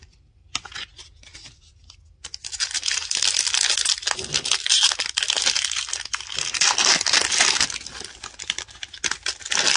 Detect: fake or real real